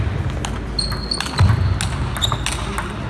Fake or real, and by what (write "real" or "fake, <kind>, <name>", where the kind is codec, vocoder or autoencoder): real